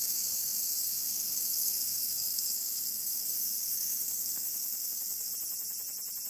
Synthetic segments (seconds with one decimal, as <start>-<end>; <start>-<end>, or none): 0.0-5.3